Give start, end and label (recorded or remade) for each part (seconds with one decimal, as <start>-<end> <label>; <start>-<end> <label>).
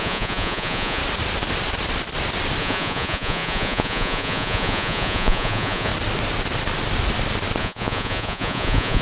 0.0-1.0 remade; 1.0-2.6 recorded; 2.6-5.9 remade; 5.9-7.6 recorded; 7.6-9.0 remade